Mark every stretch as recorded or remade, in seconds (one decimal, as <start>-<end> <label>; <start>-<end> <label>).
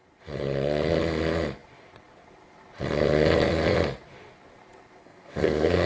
0.0-5.0 recorded; 5.0-5.9 remade